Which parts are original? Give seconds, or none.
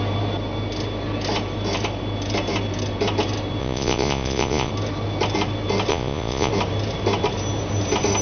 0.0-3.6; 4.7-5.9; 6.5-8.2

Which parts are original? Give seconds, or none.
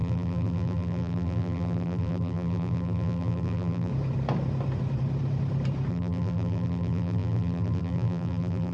3.9-5.9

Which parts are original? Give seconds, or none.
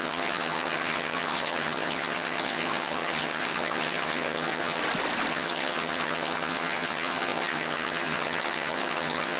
4.8-5.3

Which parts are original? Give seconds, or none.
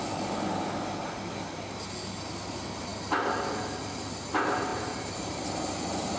0.0-4.7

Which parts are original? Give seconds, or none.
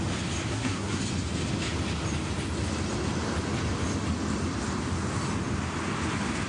0.0-0.5; 1.0-6.5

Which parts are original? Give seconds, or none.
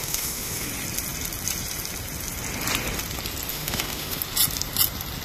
0.7-3.5; 4.2-5.2